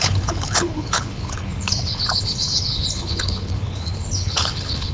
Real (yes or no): no